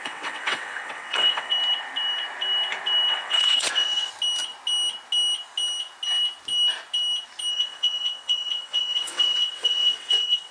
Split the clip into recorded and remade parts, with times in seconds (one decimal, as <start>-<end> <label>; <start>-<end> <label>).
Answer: 0.0-1.5 remade; 1.5-3.1 recorded; 3.1-4.1 remade; 4.1-7.5 recorded; 7.5-10.5 remade